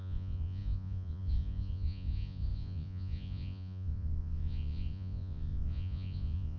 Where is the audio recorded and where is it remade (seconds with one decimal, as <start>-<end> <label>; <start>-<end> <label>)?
0.0-6.6 remade